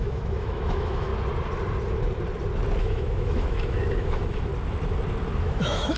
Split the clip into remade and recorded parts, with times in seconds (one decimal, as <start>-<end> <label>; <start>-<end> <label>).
0.0-1.1 remade; 1.1-2.8 recorded; 2.8-4.5 remade; 4.5-5.4 recorded; 5.4-6.0 remade